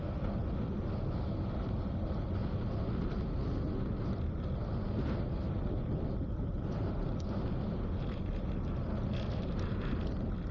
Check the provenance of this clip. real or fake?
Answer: real